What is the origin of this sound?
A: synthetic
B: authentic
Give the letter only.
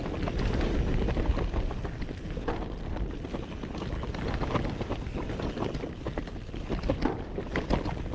B